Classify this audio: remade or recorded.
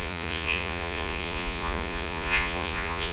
remade